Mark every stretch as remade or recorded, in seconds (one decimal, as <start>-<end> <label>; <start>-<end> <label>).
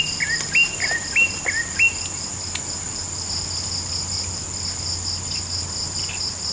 0.0-6.5 recorded